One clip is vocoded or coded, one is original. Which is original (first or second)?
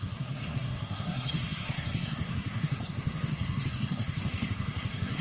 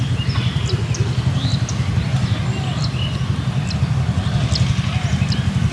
second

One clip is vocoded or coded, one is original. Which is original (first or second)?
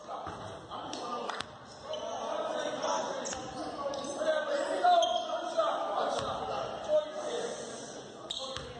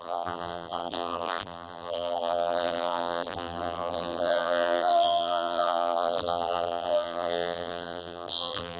first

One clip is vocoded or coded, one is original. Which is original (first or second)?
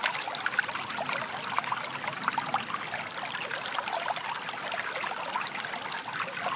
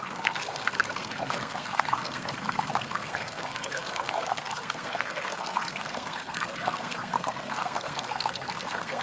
first